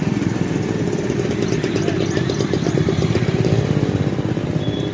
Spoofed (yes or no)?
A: yes